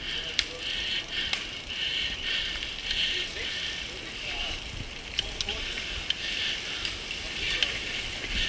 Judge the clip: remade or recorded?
recorded